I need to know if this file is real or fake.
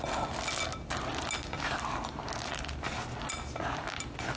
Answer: real